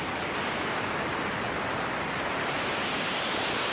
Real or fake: real